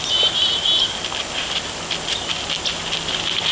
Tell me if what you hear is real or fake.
real